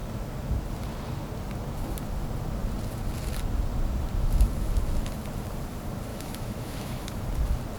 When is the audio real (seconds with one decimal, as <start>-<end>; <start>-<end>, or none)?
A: 0.0-6.1; 7.2-7.8